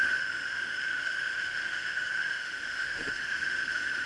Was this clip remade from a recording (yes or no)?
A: yes